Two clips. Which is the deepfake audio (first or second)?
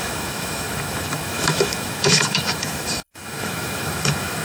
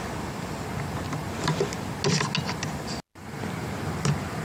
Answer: first